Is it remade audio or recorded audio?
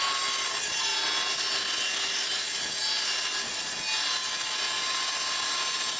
recorded